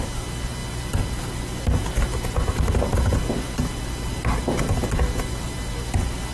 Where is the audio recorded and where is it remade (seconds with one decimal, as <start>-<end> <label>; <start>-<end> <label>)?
0.0-6.3 recorded